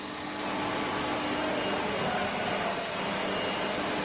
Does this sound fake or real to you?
real